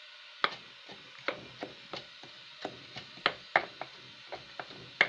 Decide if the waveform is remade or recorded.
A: recorded